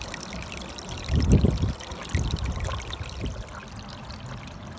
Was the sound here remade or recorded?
recorded